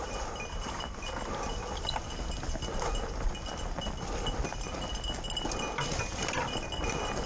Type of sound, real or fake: real